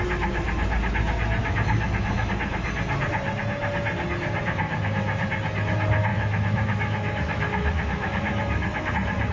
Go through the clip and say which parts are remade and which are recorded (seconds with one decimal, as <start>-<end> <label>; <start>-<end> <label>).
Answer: 0.0-1.4 recorded; 1.4-2.3 remade; 2.3-6.1 recorded; 6.1-8.9 remade; 8.9-9.3 recorded